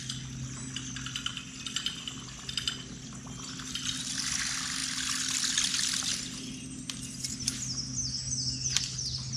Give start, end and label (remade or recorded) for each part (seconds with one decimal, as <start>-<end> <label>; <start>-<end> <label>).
0.0-9.4 recorded